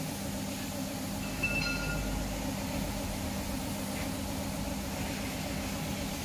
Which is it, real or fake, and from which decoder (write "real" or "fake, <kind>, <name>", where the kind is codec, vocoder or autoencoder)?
real